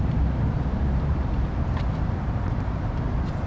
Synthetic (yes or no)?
yes